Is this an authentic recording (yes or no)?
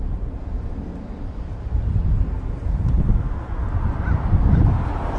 yes